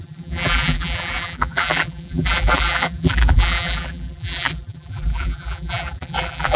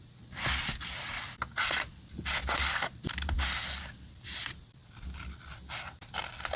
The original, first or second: second